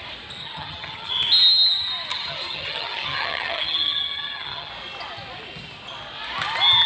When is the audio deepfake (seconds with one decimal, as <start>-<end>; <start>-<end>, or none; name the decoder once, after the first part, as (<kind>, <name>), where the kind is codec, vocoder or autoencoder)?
0.4-1.1 (vocoder, HiFi-GAN); 2.1-4.7